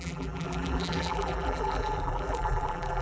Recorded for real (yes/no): no